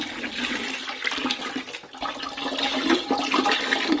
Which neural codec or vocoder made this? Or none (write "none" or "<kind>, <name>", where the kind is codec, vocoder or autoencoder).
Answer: none